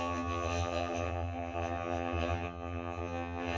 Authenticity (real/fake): fake